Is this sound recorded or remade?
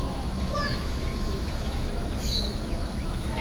remade